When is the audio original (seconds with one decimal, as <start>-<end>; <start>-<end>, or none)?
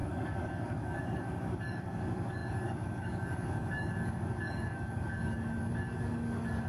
none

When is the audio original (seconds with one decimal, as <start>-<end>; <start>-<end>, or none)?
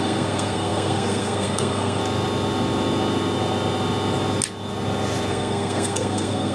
2.0-5.3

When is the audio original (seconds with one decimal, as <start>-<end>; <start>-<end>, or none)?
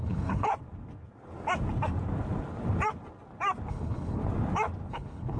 0.5-3.7; 4.2-4.9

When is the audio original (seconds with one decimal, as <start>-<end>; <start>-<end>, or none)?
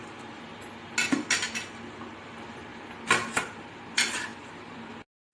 0.0-5.3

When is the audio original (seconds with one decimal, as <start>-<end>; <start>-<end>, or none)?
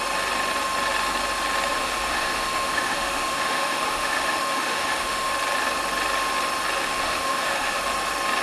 0.0-1.7; 5.3-6.8; 7.8-8.4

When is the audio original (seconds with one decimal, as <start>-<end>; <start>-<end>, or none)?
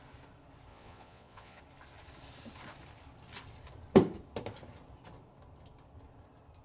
0.0-0.7; 1.6-6.6